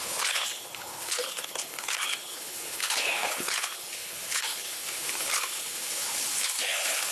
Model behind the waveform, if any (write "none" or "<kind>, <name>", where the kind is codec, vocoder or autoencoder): codec, HILCodec